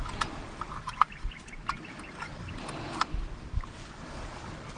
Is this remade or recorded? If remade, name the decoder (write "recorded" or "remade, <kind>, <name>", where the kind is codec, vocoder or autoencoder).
recorded